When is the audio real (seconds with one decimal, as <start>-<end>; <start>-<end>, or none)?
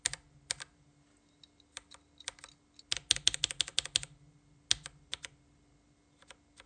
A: 0.0-6.7